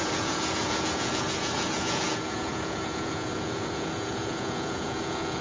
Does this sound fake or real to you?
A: fake